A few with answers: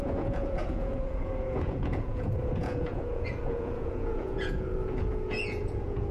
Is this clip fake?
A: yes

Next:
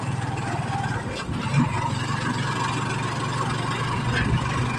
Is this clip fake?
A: no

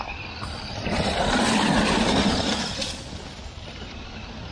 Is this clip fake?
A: no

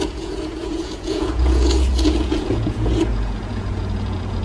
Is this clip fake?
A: yes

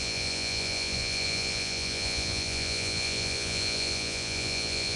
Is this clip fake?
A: yes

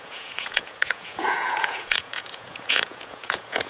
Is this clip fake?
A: yes